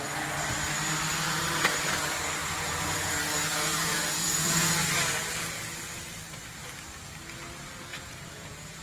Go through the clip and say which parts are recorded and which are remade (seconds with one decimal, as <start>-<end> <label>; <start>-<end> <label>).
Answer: 0.0-2.4 recorded; 2.4-3.1 remade; 3.1-3.5 recorded; 3.5-4.8 remade; 4.8-7.9 recorded; 7.9-8.8 remade